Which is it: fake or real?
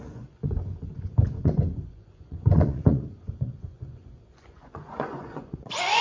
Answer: fake